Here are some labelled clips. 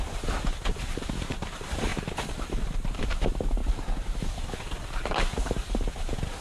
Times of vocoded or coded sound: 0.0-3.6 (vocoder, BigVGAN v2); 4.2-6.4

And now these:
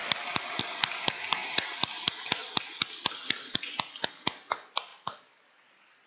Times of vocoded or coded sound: none

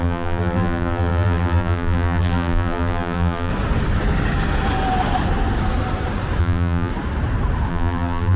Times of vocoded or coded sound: 0.0-3.5 (vocoder, BigVGAN v2); 6.4-6.9; 7.7-8.4

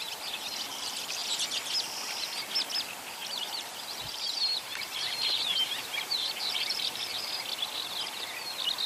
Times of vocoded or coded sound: 3.2-7.2 (vocoder, BigVGAN v2)